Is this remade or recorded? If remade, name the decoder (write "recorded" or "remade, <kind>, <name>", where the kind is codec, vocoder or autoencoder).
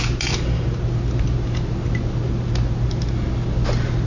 recorded